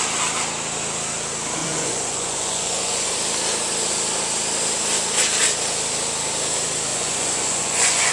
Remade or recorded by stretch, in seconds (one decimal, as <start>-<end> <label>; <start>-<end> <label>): 0.0-1.6 recorded; 1.6-3.1 remade; 3.1-6.9 recorded; 6.9-8.1 remade